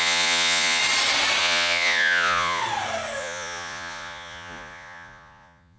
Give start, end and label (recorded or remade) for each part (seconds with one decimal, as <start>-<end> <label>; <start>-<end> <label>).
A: 0.0-0.8 remade; 0.8-1.4 recorded; 1.4-2.6 remade; 2.6-3.2 recorded; 3.2-5.8 remade